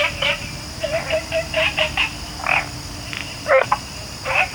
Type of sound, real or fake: fake